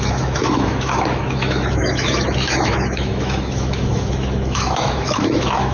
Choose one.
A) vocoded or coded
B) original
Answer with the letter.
A